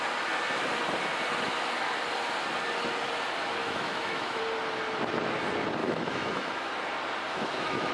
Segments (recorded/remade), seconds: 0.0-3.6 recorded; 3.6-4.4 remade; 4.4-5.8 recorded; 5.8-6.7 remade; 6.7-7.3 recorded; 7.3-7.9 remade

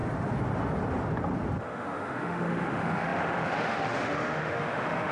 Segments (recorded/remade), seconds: 0.0-1.6 recorded; 1.6-5.1 remade

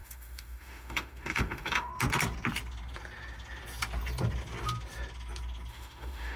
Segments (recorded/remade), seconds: 0.0-1.9 remade; 1.9-5.7 recorded; 5.7-6.4 remade